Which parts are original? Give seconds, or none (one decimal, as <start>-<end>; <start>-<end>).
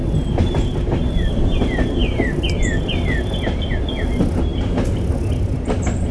0.0-6.1